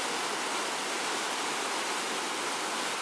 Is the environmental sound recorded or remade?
recorded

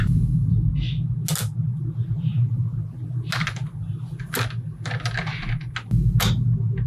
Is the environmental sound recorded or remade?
recorded